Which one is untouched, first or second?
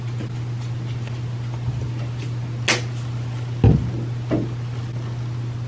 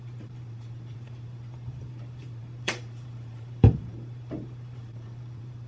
first